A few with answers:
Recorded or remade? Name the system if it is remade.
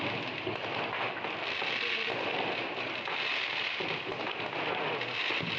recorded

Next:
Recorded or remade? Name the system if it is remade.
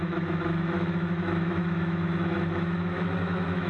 remade, autoencoder, DAC-VAE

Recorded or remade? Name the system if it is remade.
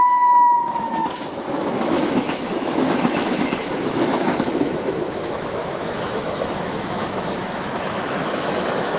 remade, autoencoder, DAC-VAE